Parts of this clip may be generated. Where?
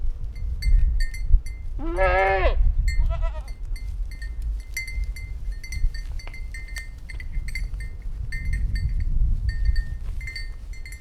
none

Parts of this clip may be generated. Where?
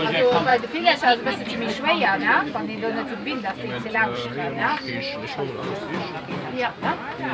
3.8-4.9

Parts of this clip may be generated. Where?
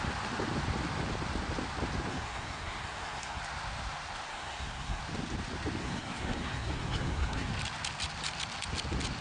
2.1-3.4; 4.3-5.0; 5.8-7.5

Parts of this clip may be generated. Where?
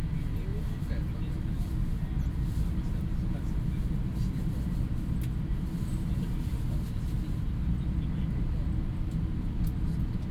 none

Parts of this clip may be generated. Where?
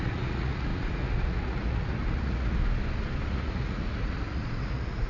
0.0-2.6; 3.3-5.1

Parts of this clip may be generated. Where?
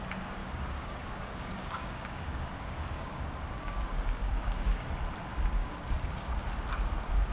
0.4-4.8; 5.6-6.4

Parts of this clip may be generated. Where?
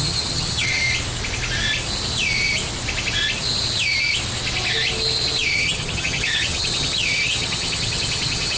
0.0-0.8; 5.5-8.6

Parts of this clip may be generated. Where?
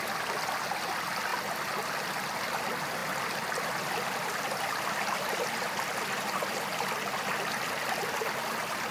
none